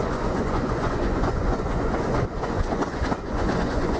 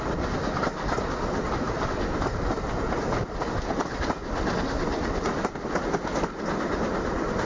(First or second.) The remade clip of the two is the first